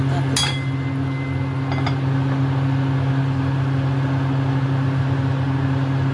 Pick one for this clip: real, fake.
real